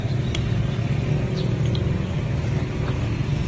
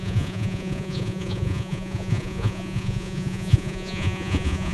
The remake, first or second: second